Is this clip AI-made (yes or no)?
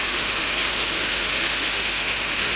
yes